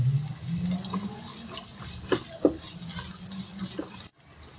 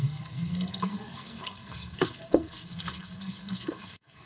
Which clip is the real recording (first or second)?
first